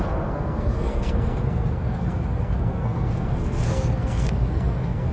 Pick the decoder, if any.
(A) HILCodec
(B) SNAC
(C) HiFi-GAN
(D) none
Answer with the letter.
B